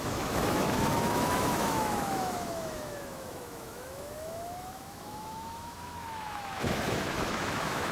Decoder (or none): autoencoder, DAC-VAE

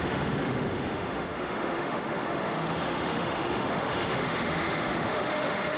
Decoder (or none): autoencoder, DAC-VAE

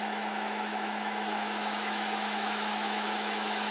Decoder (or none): autoencoder, DAC-VAE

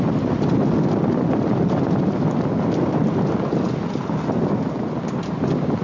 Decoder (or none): none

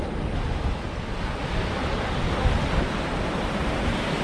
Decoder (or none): none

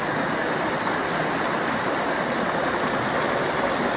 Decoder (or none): none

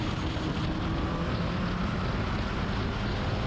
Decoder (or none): none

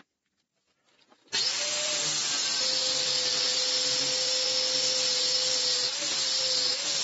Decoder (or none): none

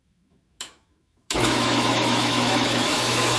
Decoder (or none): autoencoder, DAC-VAE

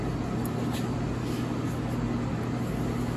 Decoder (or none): none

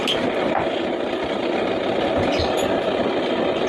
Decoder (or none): none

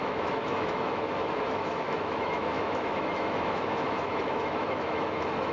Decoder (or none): autoencoder, DAC-VAE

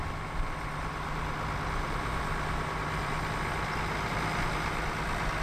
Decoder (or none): none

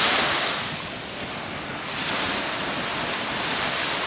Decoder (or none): none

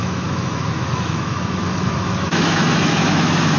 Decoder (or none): autoencoder, DAC-VAE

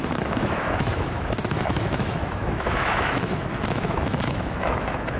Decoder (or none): autoencoder, DAC-VAE